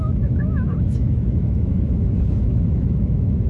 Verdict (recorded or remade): remade